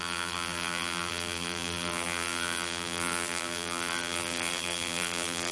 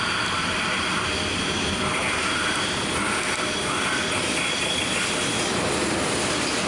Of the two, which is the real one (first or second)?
second